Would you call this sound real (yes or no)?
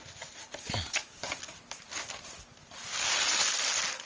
yes